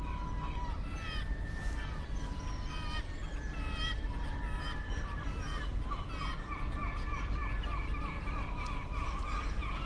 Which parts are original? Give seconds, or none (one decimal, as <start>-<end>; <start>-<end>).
none